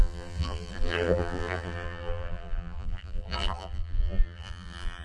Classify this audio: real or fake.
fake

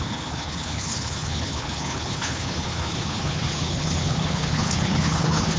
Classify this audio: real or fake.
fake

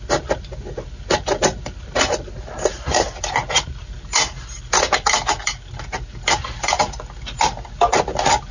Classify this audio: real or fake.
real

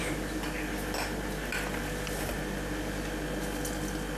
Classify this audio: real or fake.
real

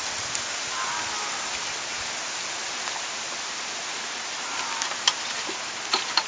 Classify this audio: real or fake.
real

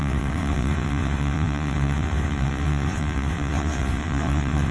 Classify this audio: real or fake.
fake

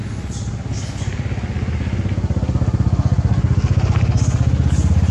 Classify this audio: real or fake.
real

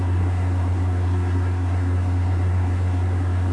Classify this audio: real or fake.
fake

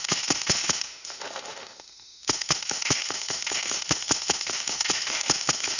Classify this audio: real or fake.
fake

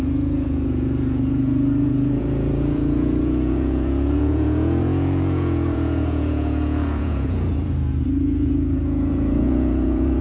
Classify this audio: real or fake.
fake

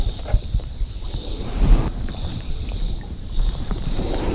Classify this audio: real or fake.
fake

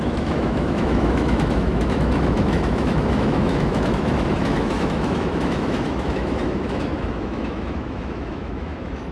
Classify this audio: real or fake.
fake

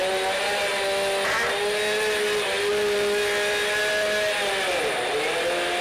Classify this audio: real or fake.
real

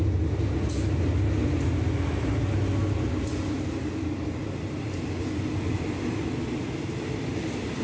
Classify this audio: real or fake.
real